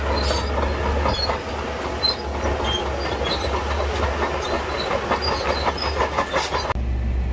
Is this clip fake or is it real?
real